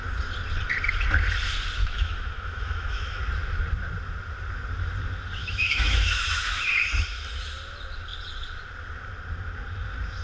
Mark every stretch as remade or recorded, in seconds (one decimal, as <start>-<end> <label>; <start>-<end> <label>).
0.0-1.8 recorded; 1.8-3.2 remade; 3.2-5.4 recorded; 5.4-6.6 remade; 6.6-10.2 recorded